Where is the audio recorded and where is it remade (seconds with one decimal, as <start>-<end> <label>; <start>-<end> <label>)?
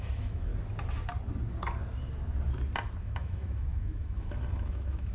0.0-0.5 remade; 0.5-3.0 recorded; 3.0-5.1 remade